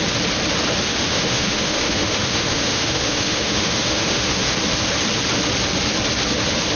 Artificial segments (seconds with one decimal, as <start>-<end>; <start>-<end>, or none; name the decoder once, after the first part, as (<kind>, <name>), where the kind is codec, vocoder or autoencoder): 0.9-4.5 (autoencoder, DAC-VAE)